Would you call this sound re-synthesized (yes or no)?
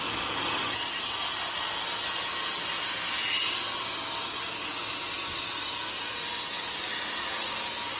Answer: no